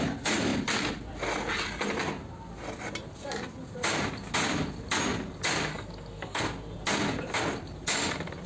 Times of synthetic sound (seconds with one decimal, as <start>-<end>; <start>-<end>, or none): 5.7-6.4